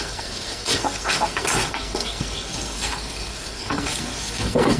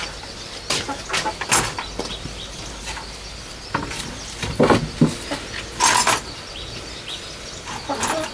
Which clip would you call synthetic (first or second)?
first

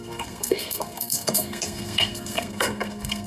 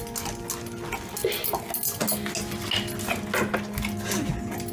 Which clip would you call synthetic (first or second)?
first